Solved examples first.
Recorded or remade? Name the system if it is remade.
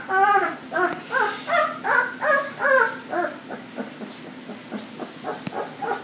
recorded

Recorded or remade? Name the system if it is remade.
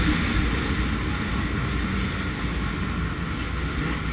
recorded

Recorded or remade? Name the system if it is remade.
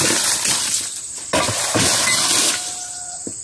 recorded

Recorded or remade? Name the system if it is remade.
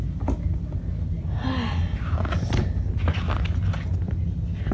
recorded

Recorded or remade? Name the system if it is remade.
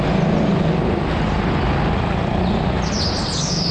recorded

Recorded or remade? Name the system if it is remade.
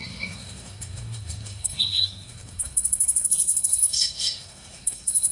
remade, codec, SNAC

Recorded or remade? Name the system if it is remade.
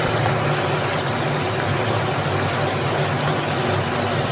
recorded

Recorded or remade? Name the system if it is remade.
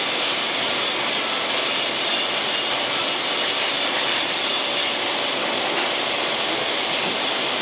recorded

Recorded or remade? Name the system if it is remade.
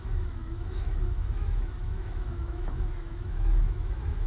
remade, autoencoder, DAC-VAE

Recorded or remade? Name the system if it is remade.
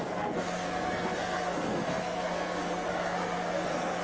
remade, codec, SNAC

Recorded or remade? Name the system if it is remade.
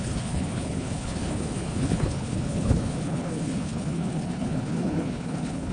remade, codec, HILCodec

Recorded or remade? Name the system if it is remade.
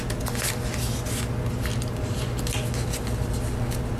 recorded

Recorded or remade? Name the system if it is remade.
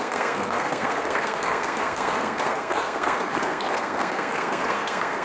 remade, codec, SNAC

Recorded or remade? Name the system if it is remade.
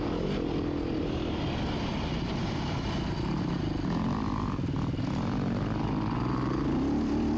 recorded